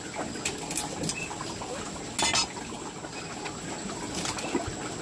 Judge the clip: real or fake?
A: real